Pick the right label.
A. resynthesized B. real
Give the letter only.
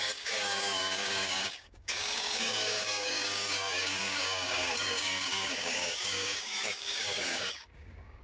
A